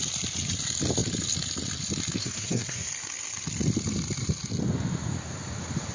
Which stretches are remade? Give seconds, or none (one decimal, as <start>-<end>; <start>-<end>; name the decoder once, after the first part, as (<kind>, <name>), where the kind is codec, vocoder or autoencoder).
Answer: 2.2-2.9 (codec, SNAC)